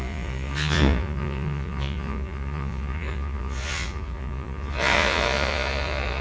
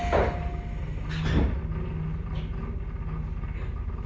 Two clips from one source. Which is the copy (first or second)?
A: first